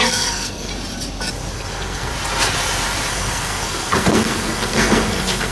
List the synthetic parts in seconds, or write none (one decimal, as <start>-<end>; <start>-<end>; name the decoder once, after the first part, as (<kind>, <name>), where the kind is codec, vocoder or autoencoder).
0.0-0.7 (codec, SNAC); 1.5-2.1; 3.1-5.5